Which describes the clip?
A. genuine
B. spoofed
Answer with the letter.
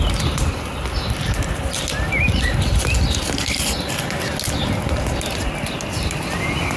A